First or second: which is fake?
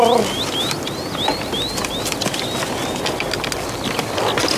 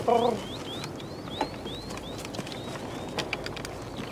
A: first